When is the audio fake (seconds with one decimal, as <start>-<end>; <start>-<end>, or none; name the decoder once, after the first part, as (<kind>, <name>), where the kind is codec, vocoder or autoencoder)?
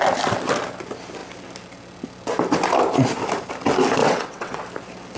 4.0-4.6 (vocoder, WaveNeXt)